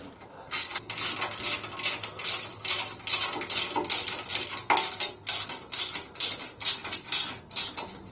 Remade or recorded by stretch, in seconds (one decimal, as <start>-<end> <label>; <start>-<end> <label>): 0.0-8.1 recorded